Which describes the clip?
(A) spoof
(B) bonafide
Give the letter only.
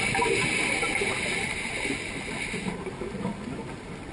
B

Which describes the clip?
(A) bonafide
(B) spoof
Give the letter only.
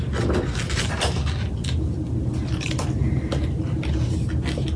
A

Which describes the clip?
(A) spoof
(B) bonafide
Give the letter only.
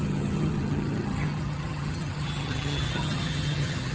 A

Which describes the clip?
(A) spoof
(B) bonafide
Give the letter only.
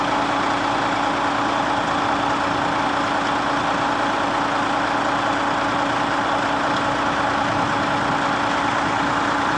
B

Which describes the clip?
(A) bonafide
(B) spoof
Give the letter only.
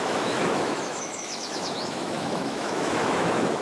B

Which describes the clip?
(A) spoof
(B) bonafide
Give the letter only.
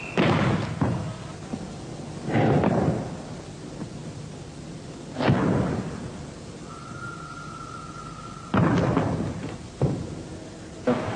B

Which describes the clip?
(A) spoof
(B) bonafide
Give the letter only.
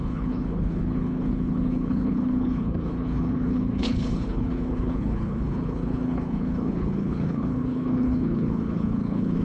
A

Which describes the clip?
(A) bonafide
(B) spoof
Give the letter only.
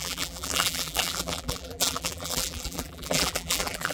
B